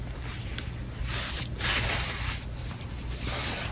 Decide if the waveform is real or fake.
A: real